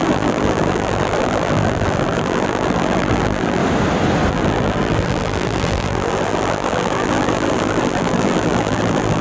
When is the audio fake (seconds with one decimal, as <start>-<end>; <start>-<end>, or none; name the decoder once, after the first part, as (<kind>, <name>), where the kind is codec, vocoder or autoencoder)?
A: 0.0-3.6 (vocoder, BigVGAN v2); 4.3-9.2